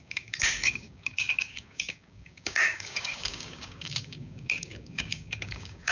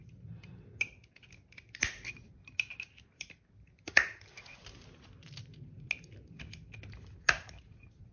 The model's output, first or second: first